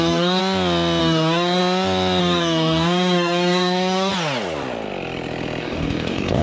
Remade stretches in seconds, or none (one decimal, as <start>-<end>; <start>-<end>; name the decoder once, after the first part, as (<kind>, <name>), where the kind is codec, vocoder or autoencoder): 0.0-0.4 (codec, DAC); 1.0-1.6; 2.2-4.1; 5.6-6.4